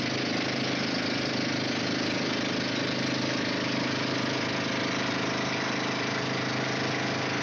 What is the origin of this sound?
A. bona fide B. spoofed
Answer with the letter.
A